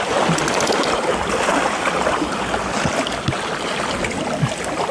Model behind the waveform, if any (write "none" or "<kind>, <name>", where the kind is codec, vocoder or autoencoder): none